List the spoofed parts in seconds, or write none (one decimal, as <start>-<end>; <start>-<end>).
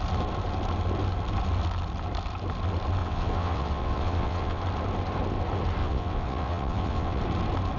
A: 3.0-4.6; 5.8-7.2